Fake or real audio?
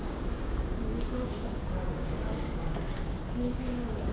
fake